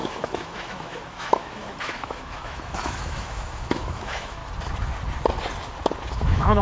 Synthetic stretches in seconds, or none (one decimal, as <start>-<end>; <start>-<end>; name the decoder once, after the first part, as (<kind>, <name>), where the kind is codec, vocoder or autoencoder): 0.0-4.4 (autoencoder, DAC-VAE); 6.1-6.6